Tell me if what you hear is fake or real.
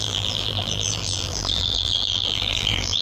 fake